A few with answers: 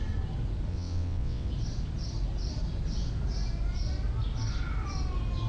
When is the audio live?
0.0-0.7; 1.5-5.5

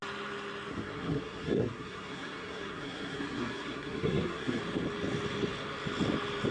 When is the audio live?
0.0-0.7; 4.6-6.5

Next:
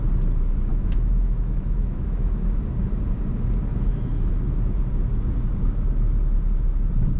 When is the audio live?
0.0-0.7; 2.7-3.7; 4.3-7.2

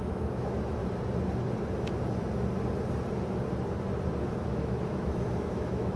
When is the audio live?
0.8-4.4